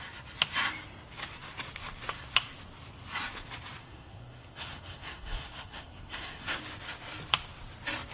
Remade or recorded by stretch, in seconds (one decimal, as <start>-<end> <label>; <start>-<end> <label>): 0.0-3.8 recorded; 3.8-6.6 remade; 6.6-8.1 recorded